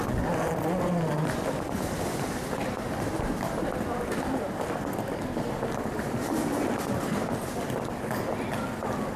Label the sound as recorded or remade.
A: recorded